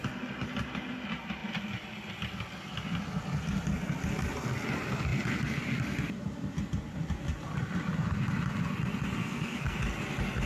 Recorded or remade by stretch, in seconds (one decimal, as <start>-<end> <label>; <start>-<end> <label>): 0.0-9.2 recorded; 9.2-9.8 remade; 9.8-10.5 recorded